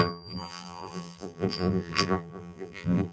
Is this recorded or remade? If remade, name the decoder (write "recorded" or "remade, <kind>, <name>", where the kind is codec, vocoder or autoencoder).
remade, vocoder, BigVGAN v2